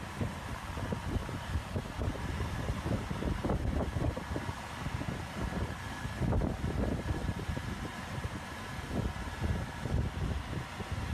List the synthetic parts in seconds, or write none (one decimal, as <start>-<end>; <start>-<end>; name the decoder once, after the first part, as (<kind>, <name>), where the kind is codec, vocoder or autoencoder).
1.2-4.3 (vocoder, BigVGAN v2); 7.2-8.9